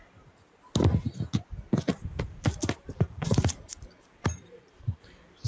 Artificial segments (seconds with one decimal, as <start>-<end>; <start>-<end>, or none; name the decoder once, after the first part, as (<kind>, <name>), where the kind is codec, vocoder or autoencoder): 1.9-5.5 (vocoder, BigVGAN v2)